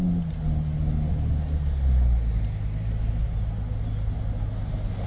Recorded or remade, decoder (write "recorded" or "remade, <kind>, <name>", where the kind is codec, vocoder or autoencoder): recorded